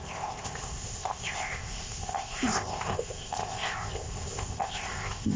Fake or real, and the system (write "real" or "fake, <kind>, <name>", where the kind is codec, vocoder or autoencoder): fake, codec, ZipCodec